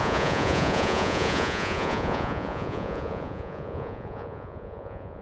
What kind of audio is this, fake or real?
fake